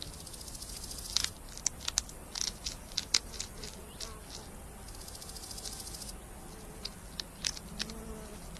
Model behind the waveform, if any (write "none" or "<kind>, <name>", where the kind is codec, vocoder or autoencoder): none